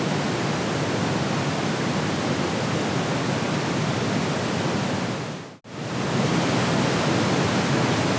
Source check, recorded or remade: recorded